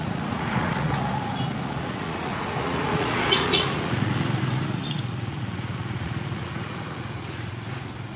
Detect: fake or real fake